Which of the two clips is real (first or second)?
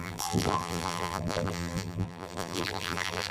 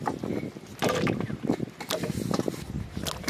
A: second